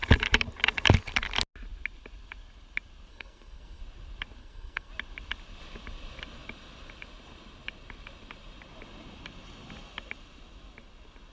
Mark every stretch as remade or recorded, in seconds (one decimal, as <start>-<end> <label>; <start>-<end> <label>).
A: 0.0-3.1 recorded; 3.1-3.8 remade; 3.8-4.4 recorded; 4.4-4.9 remade; 4.9-11.3 recorded